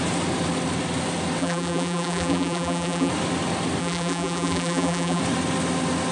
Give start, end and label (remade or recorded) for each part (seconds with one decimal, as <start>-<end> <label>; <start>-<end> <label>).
0.0-1.4 recorded; 1.4-3.1 remade; 3.1-3.8 recorded; 3.8-5.2 remade; 5.2-6.1 recorded

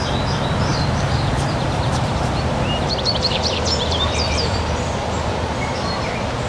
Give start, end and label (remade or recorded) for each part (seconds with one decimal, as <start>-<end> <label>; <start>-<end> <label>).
0.0-0.7 recorded; 0.7-4.6 remade; 4.6-6.5 recorded

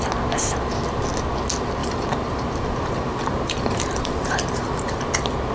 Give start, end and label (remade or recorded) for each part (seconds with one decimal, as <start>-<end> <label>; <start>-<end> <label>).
0.0-1.8 recorded; 1.8-5.0 remade; 5.0-5.5 recorded

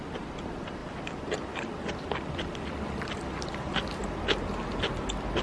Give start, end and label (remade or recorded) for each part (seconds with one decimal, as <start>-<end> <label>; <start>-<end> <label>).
0.0-5.4 recorded

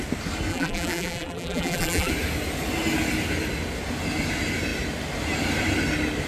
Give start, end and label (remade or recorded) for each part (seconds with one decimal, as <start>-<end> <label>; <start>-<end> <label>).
0.0-0.5 recorded; 0.5-2.1 remade; 2.1-6.3 recorded

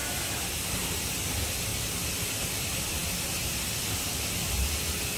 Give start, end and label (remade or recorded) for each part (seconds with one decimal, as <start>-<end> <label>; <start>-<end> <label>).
0.0-0.6 remade; 0.6-5.2 recorded

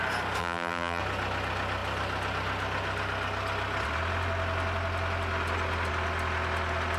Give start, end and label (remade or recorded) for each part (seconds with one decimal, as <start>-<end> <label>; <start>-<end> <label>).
0.0-0.4 recorded; 0.4-1.0 remade; 1.0-7.0 recorded

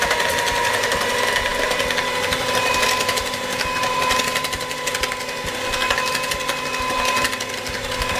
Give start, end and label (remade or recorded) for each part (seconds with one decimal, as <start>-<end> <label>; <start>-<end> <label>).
0.0-8.2 recorded